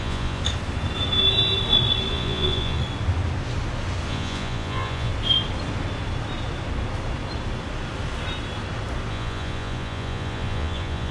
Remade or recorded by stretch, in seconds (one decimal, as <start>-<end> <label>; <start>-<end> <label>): 0.0-0.4 remade; 0.4-2.1 recorded; 2.1-2.8 remade; 2.8-4.1 recorded; 4.1-5.1 remade; 5.1-9.1 recorded; 9.1-11.1 remade